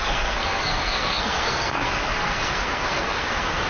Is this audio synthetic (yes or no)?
yes